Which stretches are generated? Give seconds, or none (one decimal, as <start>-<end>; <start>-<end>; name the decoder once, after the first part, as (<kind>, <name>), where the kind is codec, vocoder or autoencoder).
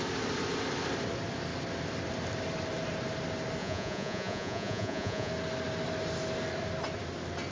3.6-5.3 (vocoder, Vocos)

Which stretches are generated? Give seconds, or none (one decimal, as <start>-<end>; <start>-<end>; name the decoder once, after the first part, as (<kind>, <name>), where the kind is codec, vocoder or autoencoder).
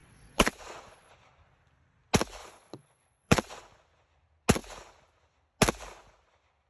0.0-1.1 (vocoder, Vocos); 2.4-3.6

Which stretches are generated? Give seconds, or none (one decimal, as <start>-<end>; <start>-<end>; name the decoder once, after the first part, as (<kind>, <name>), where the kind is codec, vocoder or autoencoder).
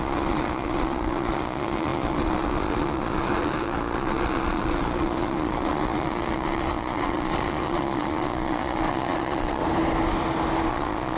0.0-9.6 (vocoder, Vocos); 10.7-11.2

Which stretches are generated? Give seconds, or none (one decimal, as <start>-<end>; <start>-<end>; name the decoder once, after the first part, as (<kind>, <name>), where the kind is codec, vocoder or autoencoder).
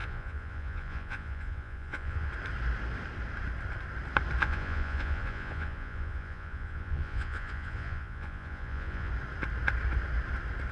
0.0-2.3 (vocoder, Vocos); 4.4-9.1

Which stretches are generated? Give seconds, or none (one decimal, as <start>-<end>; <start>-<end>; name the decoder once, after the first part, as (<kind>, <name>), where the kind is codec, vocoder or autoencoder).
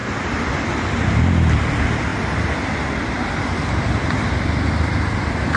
none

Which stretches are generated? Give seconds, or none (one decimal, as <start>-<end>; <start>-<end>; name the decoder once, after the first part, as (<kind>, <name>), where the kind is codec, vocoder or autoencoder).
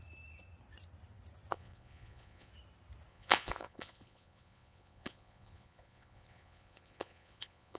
1.5-2.5 (vocoder, Vocos); 3.1-7.8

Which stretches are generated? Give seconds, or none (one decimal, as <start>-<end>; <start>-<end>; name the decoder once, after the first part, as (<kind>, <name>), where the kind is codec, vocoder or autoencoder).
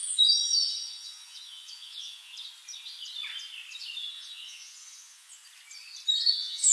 0.0-2.3 (vocoder, Vocos); 4.1-5.4; 6.3-6.7